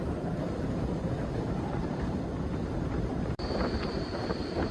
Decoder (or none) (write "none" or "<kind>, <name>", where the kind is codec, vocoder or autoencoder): vocoder, BigVGAN v2